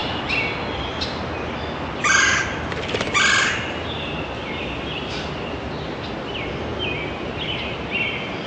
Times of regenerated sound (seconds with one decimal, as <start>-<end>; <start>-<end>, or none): none